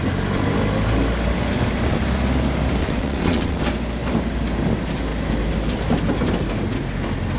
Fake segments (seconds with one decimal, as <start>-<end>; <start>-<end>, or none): 2.8-3.6